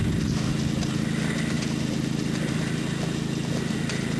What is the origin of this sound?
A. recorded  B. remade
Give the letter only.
A